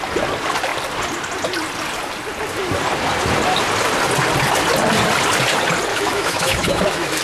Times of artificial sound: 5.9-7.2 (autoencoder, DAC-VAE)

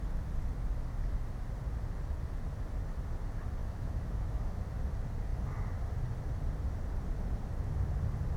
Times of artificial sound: 3.6-4.6 (autoencoder, DAC-VAE)

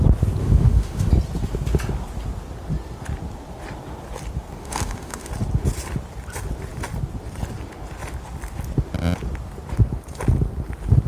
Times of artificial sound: 0.4-1.1 (autoencoder, DAC-VAE); 4.6-5.3

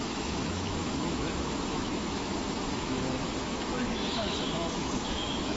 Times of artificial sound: 0.0-5.6 (autoencoder, DAC-VAE)